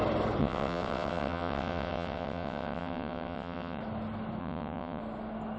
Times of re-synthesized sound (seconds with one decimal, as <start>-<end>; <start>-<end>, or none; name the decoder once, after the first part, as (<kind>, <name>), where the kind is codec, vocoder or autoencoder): 0.4-3.8 (vocoder, WaveNeXt); 4.4-5.0